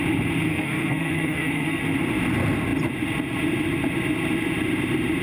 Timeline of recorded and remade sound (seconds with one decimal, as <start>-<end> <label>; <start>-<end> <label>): 0.0-0.5 recorded; 0.5-1.8 remade; 1.8-5.2 recorded